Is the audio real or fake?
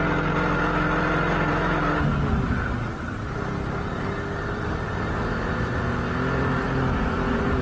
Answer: real